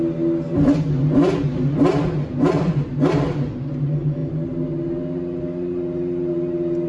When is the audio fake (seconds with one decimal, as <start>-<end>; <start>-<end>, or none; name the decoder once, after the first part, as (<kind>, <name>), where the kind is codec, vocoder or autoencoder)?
none